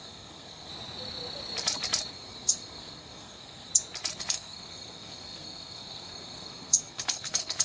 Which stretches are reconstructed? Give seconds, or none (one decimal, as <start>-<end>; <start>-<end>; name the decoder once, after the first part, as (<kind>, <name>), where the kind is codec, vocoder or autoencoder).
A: 0.0-0.7 (codec, SNAC); 2.1-3.7; 4.2-7.6